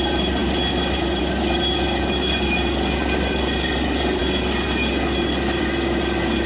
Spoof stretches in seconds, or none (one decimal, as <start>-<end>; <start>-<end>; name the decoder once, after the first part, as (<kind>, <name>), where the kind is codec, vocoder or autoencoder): none